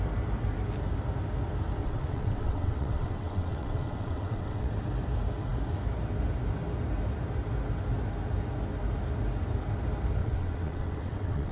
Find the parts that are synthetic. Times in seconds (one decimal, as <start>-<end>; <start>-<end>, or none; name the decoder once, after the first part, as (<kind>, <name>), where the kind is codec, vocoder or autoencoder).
1.8-4.7 (vocoder, WaveNeXt); 10.2-11.5